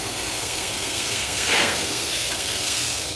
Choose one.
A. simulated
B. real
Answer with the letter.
A